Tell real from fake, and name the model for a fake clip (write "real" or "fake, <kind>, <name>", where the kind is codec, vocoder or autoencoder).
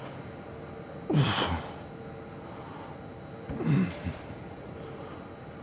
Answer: real